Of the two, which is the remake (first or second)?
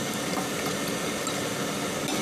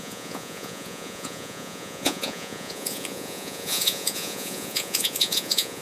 second